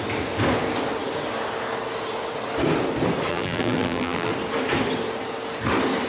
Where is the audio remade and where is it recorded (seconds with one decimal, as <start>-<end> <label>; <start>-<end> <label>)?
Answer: 0.0-3.3 recorded; 3.3-4.3 remade; 4.3-6.1 recorded